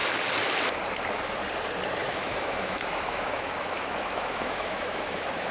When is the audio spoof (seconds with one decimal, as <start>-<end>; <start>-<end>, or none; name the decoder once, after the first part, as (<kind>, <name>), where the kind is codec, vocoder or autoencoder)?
2.0-5.5 (autoencoder, DAC-VAE)